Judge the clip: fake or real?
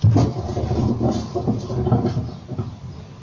real